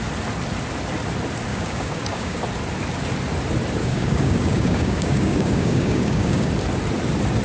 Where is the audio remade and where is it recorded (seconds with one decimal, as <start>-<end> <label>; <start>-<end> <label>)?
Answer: 0.0-1.5 recorded; 1.5-2.4 remade; 2.4-3.8 recorded; 3.8-6.5 remade; 6.5-7.4 recorded